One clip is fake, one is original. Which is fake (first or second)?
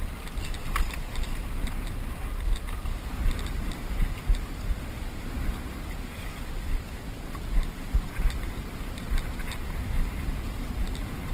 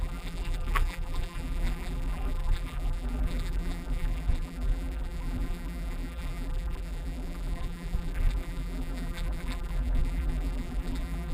second